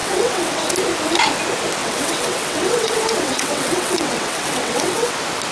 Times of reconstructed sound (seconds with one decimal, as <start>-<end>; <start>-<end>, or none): 0.0-0.7; 1.8-5.1